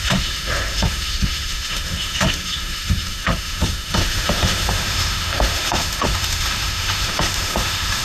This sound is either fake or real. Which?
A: fake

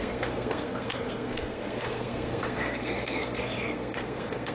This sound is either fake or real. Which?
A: fake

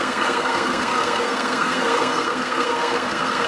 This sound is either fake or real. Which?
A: fake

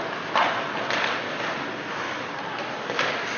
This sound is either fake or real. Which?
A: real